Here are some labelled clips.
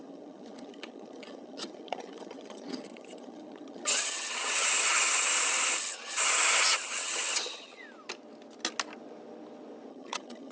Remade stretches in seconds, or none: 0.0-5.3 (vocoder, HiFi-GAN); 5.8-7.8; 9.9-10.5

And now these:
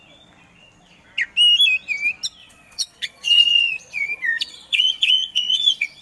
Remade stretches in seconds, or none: 2.4-6.0 (vocoder, Vocos)

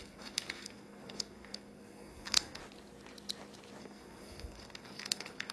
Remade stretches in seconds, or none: 0.0-2.6 (codec, SNAC); 3.8-5.5